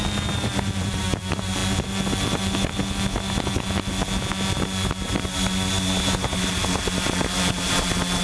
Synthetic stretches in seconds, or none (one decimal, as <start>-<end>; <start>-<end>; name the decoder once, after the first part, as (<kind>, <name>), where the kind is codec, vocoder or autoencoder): none